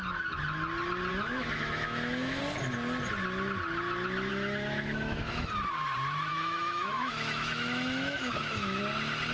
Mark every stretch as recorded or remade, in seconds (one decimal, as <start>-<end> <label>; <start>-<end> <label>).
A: 0.0-1.1 recorded; 1.1-2.4 remade; 2.4-4.3 recorded; 4.3-5.5 remade; 5.5-6.3 recorded; 6.3-8.8 remade; 8.8-9.3 recorded